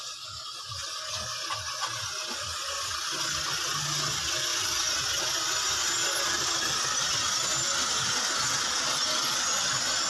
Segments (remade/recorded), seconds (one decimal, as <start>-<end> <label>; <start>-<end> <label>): 0.0-10.1 recorded